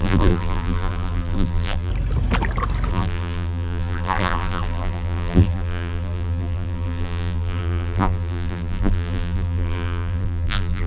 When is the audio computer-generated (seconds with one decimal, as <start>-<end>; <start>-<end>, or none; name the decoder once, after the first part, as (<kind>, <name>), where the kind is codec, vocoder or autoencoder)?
0.0-1.9 (vocoder, BigVGAN v2); 2.9-10.9